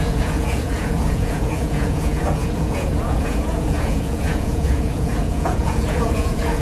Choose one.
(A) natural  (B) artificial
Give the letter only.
B